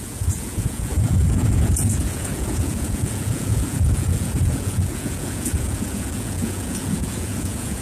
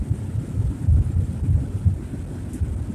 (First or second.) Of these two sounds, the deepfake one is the first